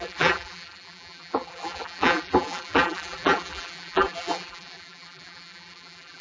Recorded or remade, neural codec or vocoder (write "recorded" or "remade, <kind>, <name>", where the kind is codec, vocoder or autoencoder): remade, vocoder, BigVGAN v2